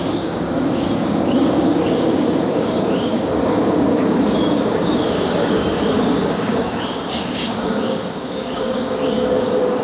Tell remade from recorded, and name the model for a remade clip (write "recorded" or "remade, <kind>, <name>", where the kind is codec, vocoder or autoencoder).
remade, codec, DAC